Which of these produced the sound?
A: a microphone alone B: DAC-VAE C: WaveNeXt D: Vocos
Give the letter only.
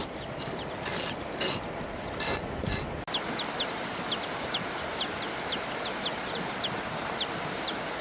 A